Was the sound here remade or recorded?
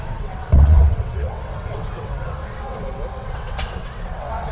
remade